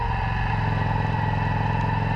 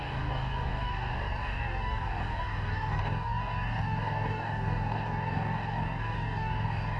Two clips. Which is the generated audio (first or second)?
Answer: second